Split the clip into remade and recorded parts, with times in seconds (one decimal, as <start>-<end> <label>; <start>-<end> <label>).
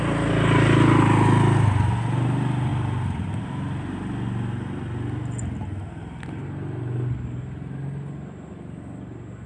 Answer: 0.0-9.5 recorded